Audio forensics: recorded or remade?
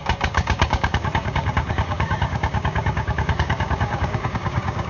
remade